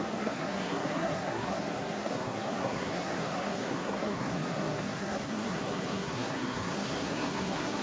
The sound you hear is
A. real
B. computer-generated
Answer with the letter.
B